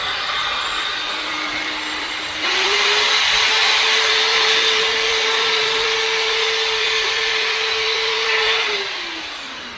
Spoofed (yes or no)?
yes